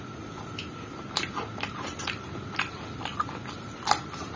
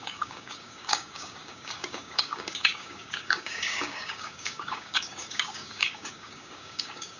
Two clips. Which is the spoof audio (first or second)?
second